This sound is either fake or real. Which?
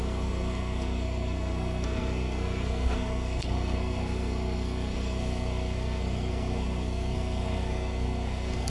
fake